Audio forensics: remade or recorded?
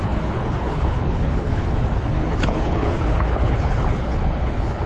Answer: remade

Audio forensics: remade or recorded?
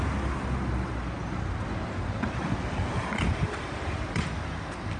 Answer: recorded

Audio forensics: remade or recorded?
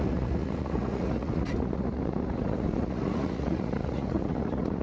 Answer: remade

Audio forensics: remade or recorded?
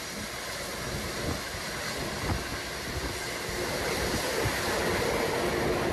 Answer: recorded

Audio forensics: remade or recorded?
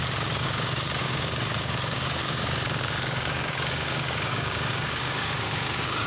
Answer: remade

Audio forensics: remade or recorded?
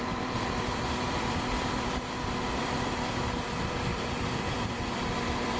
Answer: remade